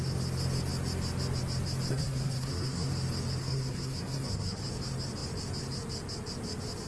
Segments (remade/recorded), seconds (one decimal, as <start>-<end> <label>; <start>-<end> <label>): 0.0-1.9 recorded; 1.9-2.9 remade; 2.9-3.4 recorded; 3.4-4.6 remade; 4.6-6.9 recorded